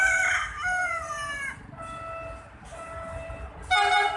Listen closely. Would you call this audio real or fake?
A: real